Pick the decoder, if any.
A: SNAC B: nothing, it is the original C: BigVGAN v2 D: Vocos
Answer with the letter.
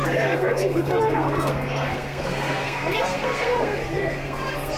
A